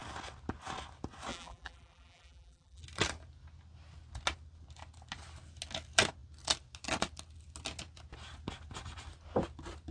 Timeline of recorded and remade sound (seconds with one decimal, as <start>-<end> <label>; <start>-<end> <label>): 0.0-1.3 recorded; 1.3-2.8 remade; 2.8-9.9 recorded